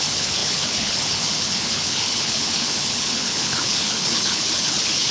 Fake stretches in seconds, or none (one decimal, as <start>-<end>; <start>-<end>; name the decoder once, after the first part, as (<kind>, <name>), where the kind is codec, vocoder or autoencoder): 0.0-5.1 (codec, HILCodec)

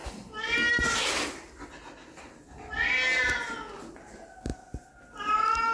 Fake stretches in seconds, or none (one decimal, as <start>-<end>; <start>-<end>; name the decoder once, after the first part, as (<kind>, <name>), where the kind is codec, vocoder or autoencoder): none

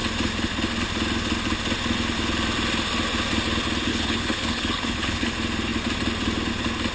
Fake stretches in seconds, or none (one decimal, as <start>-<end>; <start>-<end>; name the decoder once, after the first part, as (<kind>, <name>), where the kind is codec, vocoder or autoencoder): 3.9-5.3 (codec, HILCodec)

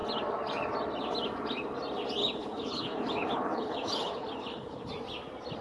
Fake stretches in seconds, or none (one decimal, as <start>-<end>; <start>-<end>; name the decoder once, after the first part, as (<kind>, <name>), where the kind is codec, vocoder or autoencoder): 2.2-4.9 (codec, HILCodec)